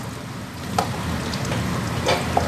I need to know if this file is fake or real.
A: real